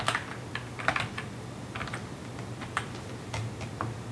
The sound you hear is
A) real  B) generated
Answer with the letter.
A